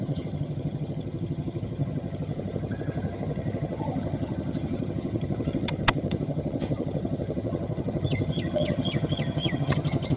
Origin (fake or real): fake